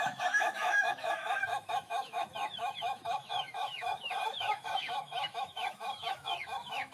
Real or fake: fake